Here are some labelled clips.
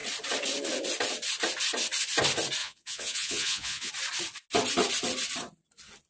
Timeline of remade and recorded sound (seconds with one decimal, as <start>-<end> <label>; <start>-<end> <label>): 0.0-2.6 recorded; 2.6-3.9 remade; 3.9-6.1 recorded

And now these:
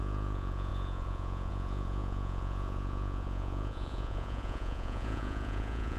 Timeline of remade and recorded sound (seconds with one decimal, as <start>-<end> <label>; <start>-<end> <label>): 0.0-6.0 remade

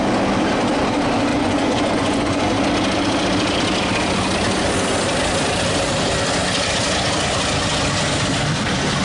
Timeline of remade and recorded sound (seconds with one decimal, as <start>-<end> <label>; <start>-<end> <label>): 0.0-1.3 recorded; 1.3-2.5 remade; 2.5-9.0 recorded